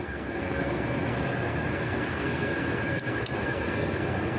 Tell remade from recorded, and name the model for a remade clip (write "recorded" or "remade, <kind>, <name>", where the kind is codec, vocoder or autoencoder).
remade, codec, SNAC